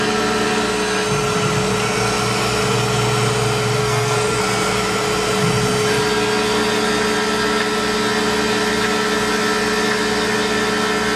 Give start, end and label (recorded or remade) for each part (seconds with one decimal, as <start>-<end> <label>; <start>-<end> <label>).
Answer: 0.0-3.8 recorded; 3.8-4.4 remade; 4.4-11.2 recorded